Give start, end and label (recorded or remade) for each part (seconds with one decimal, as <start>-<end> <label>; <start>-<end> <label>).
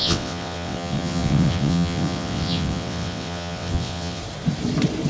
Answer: 0.0-4.2 remade; 4.2-5.1 recorded